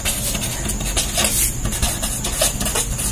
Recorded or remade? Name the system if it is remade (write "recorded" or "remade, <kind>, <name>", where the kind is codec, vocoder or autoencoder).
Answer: recorded